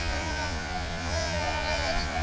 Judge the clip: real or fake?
fake